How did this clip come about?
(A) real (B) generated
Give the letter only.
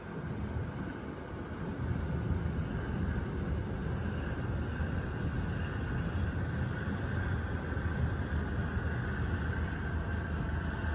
A